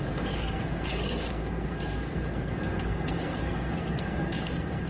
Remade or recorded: remade